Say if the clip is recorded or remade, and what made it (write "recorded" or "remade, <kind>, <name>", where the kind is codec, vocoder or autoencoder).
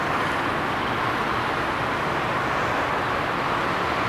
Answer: recorded